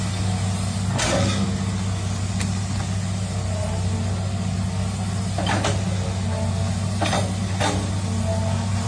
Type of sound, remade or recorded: recorded